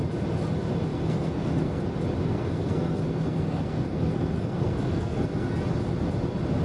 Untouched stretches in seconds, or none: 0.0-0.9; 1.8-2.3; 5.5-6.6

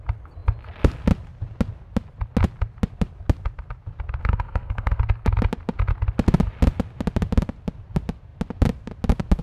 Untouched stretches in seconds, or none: 0.0-4.2; 5.0-9.4